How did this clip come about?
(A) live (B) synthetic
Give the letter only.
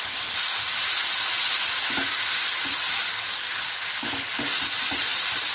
A